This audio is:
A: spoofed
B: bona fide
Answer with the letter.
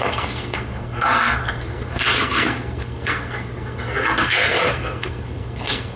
A